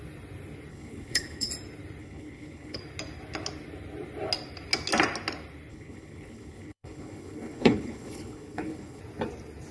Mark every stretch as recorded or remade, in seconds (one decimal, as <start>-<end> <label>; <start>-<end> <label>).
0.0-0.7 recorded; 0.7-1.5 remade; 1.5-2.0 recorded; 2.0-2.8 remade; 2.8-5.7 recorded; 5.7-9.0 remade; 9.0-9.7 recorded